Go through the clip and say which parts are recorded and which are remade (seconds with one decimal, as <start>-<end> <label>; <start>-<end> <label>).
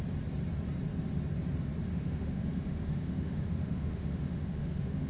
0.0-1.9 recorded; 1.9-5.1 remade